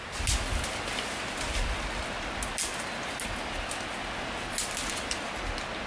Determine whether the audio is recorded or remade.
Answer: recorded